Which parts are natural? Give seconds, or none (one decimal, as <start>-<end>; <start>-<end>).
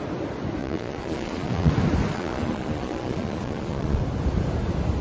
0.0-0.6; 1.7-2.1; 4.0-5.0